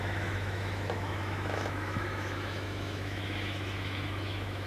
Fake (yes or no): yes